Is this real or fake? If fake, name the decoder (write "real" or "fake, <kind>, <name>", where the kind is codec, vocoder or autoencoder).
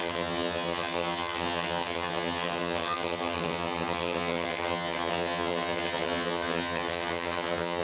fake, vocoder, HiFi-GAN